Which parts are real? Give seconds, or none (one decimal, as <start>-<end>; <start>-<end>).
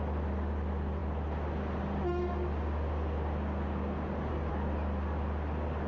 0.0-5.9